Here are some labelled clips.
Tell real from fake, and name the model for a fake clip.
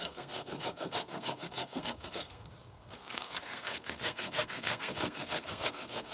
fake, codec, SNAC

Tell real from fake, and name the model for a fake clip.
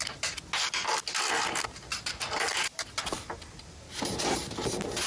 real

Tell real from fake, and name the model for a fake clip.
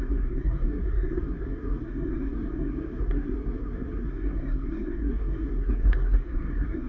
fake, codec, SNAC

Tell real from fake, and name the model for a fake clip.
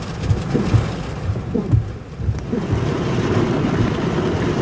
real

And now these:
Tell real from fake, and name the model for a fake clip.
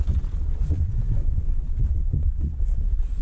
fake, vocoder, Vocos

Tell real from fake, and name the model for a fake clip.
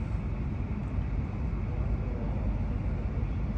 real